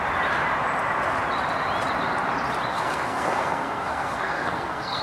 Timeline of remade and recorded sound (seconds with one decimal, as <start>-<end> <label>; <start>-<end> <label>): 0.0-2.7 recorded; 2.7-5.0 remade